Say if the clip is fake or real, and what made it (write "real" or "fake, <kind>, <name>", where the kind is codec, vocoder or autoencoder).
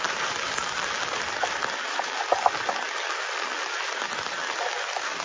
real